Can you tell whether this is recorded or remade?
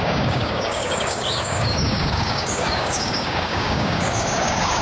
remade